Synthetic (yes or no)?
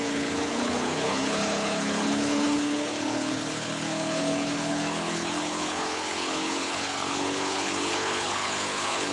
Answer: yes